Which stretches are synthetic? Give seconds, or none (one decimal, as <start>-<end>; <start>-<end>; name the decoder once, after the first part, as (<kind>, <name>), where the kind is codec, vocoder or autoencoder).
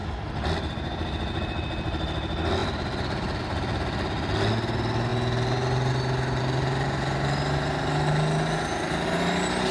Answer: 2.6-3.4 (vocoder, BigVGAN v2)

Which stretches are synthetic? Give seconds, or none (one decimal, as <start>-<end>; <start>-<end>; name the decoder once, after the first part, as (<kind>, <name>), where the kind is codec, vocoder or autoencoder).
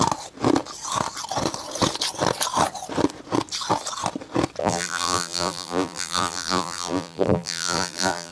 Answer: 4.6-8.3 (vocoder, BigVGAN v2)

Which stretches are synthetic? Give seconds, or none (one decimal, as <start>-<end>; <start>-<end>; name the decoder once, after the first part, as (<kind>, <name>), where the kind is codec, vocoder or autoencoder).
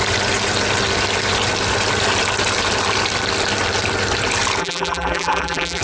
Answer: 4.6-5.8 (vocoder, BigVGAN v2)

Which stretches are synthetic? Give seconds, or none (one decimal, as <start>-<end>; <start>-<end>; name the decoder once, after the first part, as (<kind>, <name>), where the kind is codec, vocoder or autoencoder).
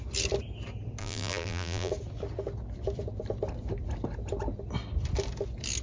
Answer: 1.0-1.9 (vocoder, BigVGAN v2)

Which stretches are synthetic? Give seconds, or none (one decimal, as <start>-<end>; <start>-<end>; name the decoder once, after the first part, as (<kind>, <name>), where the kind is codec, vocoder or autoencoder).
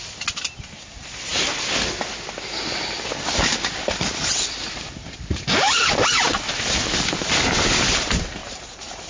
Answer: 8.4-9.1 (vocoder, BigVGAN v2)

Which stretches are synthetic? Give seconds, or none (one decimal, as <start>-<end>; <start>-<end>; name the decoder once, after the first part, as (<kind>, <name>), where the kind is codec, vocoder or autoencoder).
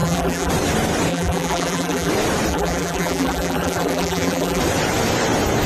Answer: 0.0-0.5 (vocoder, BigVGAN v2); 1.1-2.1; 2.5-4.6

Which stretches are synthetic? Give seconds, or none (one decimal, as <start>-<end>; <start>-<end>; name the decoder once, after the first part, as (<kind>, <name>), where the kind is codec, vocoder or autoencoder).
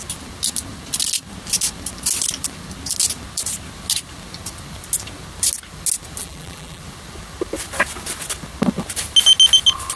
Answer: 6.2-6.8 (vocoder, BigVGAN v2)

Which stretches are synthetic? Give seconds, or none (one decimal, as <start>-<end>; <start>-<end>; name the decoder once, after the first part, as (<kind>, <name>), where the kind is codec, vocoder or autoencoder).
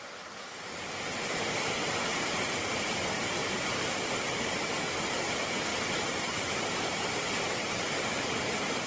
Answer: 3.4-4.9 (vocoder, BigVGAN v2); 5.7-7.7